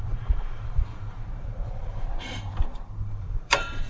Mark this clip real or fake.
fake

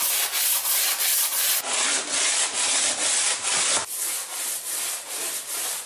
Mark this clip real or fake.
real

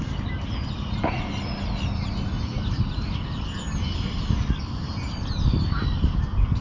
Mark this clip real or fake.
real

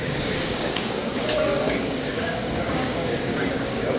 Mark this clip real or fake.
fake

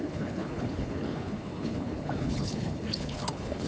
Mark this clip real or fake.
fake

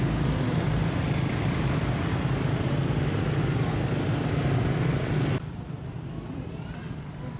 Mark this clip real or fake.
real